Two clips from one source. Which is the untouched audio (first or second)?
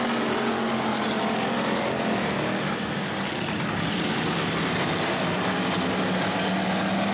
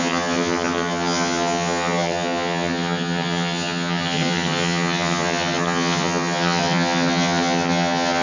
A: first